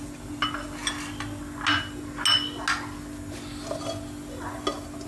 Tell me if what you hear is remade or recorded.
recorded